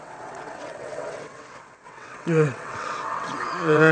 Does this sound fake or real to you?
fake